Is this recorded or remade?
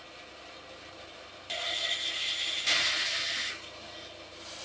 recorded